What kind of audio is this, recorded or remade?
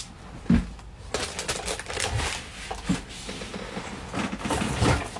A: recorded